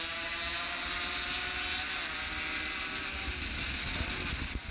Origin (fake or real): real